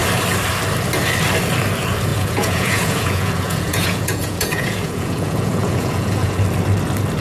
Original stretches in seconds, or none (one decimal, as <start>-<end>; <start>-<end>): 0.0-2.1; 6.4-7.2